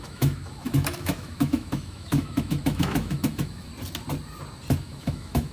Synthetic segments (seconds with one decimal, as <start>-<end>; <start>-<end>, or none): 0.0-3.7; 4.8-5.5

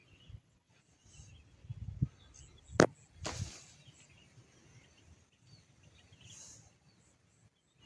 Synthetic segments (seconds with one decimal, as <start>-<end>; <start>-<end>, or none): 0.0-0.7

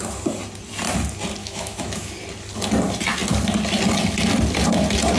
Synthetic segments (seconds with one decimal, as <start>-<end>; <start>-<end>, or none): 1.4-2.1

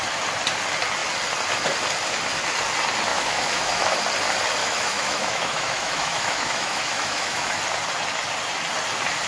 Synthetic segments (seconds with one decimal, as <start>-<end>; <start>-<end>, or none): 3.1-4.0; 4.6-7.6

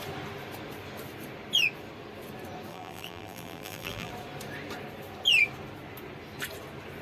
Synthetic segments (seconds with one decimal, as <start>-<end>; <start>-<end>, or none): 2.7-4.1